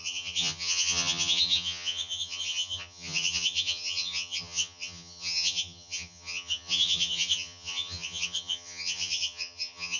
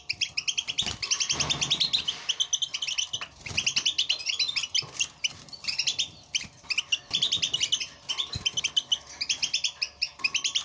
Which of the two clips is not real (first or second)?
first